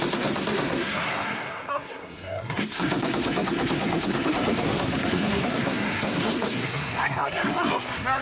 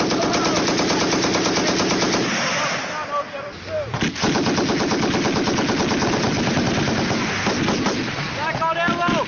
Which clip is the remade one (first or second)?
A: first